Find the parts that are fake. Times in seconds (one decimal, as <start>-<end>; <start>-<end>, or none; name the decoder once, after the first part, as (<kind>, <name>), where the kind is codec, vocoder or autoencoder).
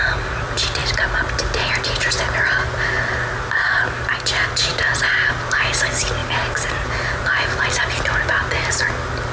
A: 6.2-7.2 (vocoder, BigVGAN v2)